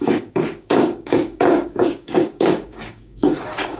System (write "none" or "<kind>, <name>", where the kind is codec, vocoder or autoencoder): codec, DAC